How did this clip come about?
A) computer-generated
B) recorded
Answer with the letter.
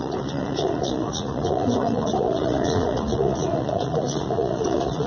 A